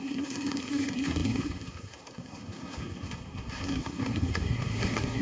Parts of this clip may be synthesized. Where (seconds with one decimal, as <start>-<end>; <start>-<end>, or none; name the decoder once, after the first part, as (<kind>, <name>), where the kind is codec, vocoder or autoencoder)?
0.0-5.2 (codec, SNAC)